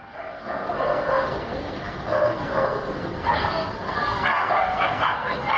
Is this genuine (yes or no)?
no